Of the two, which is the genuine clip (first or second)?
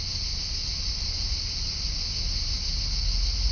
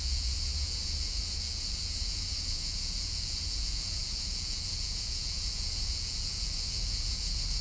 first